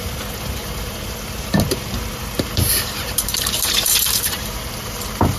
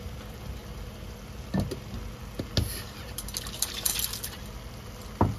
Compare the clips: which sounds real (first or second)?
second